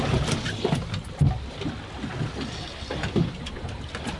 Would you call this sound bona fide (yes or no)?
yes